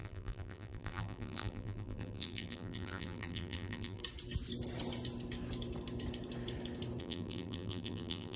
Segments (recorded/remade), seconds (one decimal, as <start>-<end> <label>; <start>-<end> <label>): 0.0-4.0 remade; 4.0-7.0 recorded; 7.0-8.4 remade